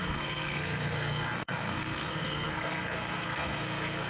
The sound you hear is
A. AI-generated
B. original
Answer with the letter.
A